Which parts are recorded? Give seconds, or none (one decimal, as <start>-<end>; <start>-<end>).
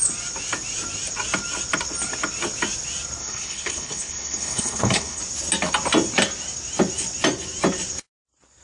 0.0-3.2; 5.2-8.6